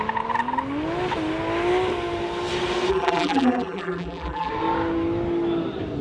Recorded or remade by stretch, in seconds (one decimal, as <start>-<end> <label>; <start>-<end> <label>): 0.0-2.9 recorded; 2.9-4.5 remade; 4.5-6.0 recorded